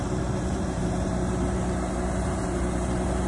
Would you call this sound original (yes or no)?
no